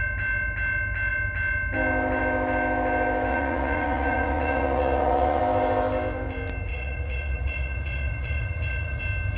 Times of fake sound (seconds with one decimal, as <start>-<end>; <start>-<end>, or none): 3.3-5.4; 6.7-9.0